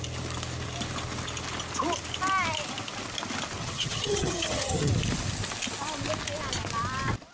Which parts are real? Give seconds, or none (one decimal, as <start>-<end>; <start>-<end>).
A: 0.0-3.6; 4.9-7.3